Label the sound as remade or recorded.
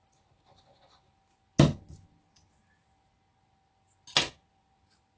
recorded